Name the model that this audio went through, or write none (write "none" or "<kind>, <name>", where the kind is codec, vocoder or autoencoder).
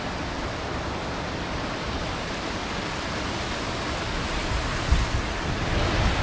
none